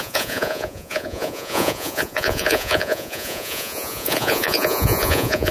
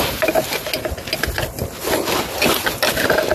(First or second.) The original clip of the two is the second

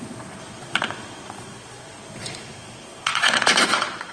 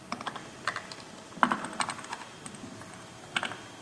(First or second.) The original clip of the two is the second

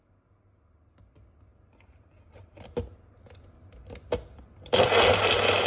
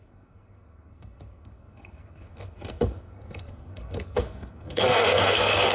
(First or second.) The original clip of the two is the first